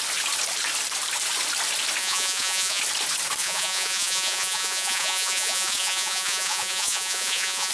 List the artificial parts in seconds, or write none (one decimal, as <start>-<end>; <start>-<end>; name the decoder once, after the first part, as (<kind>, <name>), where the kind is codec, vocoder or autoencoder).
2.0-2.8 (vocoder, Vocos); 3.4-7.7